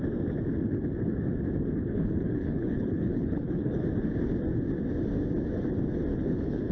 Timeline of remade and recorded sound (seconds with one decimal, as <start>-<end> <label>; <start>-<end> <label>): 0.0-1.8 recorded; 1.8-3.8 remade; 3.8-6.1 recorded; 6.1-6.7 remade